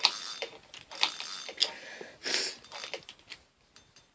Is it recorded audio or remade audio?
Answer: recorded